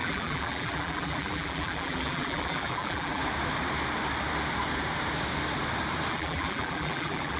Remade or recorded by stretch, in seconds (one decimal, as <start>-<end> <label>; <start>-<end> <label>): 0.0-3.2 remade; 3.2-6.1 recorded; 6.1-7.4 remade